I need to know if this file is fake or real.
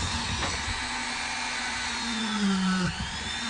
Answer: fake